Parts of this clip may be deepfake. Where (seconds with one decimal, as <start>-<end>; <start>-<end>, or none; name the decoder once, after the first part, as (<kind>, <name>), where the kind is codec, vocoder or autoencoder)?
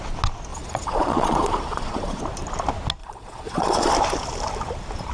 0.5-2.2 (vocoder, Vocos); 3.0-3.9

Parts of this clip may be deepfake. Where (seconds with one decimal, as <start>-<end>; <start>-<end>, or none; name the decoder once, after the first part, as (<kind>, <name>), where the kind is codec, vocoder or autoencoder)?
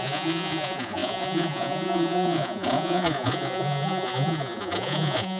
0.0-5.4 (vocoder, Vocos)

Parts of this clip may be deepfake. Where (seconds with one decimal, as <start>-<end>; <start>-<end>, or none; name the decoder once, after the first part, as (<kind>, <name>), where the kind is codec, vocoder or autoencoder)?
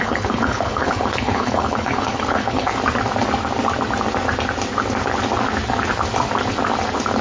0.0-2.7 (codec, HILCodec)